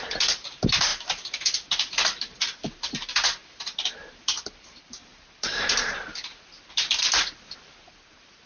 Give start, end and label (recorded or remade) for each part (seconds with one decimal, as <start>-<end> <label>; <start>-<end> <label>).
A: 0.0-8.5 recorded